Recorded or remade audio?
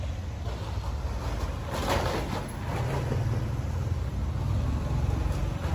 recorded